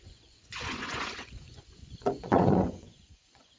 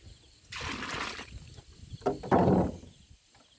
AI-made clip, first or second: first